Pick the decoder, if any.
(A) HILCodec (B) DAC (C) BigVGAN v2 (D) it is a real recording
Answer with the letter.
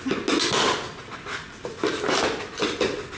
D